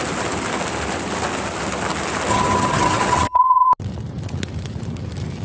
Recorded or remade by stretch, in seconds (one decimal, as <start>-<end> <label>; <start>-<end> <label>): 0.0-2.3 recorded; 2.3-3.7 remade; 3.7-5.4 recorded